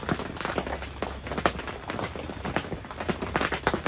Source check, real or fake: real